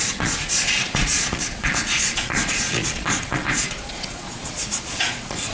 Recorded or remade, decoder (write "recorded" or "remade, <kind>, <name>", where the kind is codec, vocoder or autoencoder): remade, vocoder, Vocos